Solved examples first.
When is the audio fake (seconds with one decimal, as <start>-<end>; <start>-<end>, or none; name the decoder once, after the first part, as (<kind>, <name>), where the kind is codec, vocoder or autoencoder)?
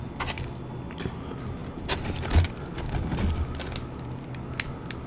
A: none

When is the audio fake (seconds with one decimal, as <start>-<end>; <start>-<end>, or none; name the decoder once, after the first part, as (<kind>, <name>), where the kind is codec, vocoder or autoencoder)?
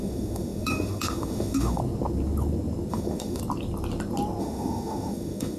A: 0.0-1.8 (autoencoder, DAC-VAE); 2.9-3.4; 4.4-5.6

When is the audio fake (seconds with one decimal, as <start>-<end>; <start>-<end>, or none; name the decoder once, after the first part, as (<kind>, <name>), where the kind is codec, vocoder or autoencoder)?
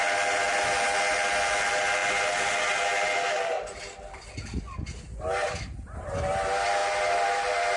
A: none